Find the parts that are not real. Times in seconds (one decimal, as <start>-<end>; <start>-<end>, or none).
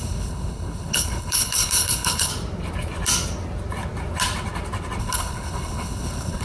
0.0-2.3; 5.0-6.4